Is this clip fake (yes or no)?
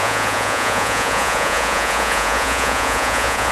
yes